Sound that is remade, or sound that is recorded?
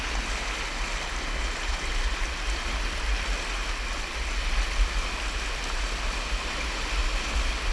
recorded